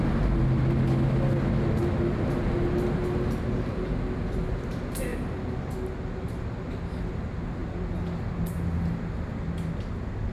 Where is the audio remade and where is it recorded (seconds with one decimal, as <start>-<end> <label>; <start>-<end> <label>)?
0.0-10.3 recorded